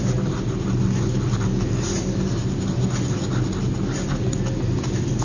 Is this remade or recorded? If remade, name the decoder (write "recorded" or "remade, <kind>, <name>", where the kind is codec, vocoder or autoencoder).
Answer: recorded